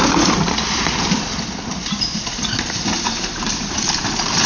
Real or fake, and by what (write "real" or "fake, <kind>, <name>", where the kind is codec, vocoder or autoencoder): fake, vocoder, BigVGAN v2